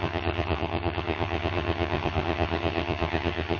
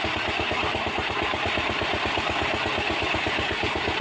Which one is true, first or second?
second